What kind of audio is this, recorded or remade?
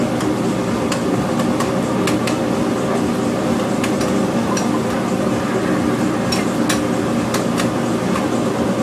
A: recorded